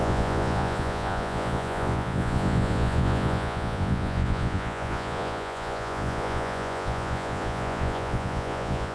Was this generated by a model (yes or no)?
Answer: yes